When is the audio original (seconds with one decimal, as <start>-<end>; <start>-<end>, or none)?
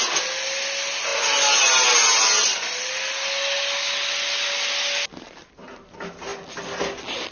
0.0-7.3